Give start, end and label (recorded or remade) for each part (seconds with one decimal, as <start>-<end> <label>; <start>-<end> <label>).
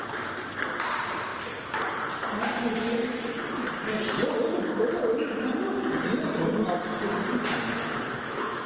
0.0-3.0 recorded; 3.0-3.7 remade; 3.7-7.8 recorded; 7.8-8.7 remade